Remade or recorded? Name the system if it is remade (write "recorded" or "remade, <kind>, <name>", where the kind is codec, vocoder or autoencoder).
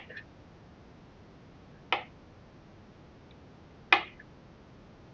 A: recorded